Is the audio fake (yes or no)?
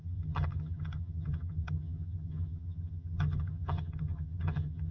yes